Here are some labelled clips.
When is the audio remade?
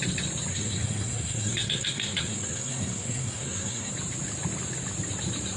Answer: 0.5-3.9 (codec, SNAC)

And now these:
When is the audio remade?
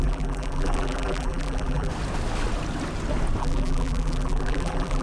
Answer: 0.0-1.9 (vocoder, BigVGAN v2); 3.4-5.0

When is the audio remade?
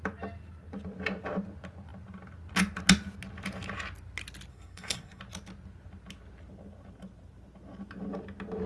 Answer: 4.5-5.2 (codec, SNAC)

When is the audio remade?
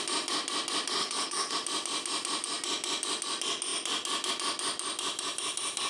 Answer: 1.0-1.5 (codec, HILCodec)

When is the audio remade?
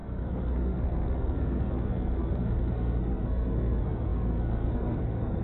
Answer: 0.0-5.4 (codec, SNAC)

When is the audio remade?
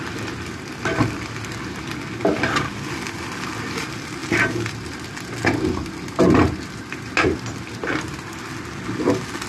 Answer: none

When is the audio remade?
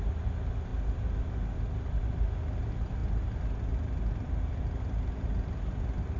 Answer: none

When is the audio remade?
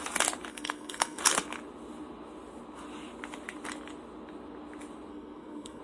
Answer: 0.5-1.2 (codec, SNAC); 5.1-5.8